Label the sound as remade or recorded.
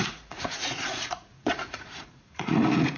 remade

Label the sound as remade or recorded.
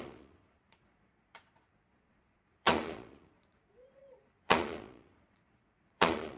remade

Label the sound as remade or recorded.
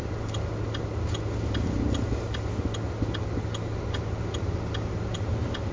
recorded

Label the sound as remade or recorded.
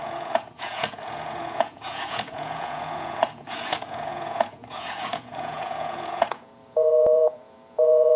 remade